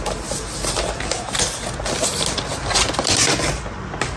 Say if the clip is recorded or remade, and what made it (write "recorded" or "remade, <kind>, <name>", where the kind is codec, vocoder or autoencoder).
recorded